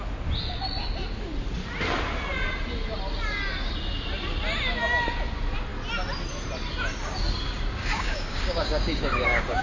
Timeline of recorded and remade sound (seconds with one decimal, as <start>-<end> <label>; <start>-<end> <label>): 0.0-7.8 recorded; 7.8-9.6 remade